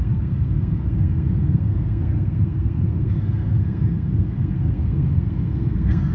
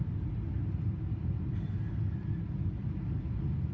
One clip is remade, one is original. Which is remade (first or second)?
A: first